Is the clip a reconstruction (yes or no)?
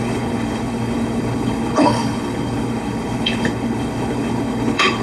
yes